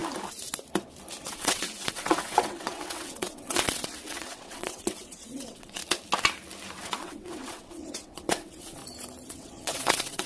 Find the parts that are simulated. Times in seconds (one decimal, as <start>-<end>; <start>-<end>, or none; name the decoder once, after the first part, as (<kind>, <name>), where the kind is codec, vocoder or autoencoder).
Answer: 1.2-5.8 (vocoder, WaveNeXt); 6.8-8.8; 9.3-10.3